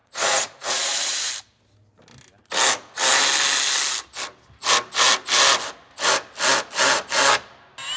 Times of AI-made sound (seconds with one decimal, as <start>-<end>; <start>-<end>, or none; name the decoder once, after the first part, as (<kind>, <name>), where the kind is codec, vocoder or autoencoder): 0.0-1.3 (vocoder, Vocos)